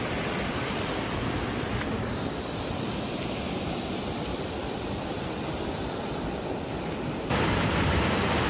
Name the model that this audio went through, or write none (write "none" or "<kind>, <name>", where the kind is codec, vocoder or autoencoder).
vocoder, BigVGAN v2